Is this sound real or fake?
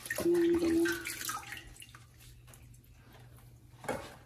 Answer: real